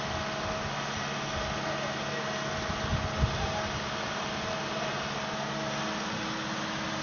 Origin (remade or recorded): recorded